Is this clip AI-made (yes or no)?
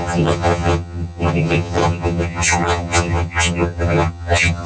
yes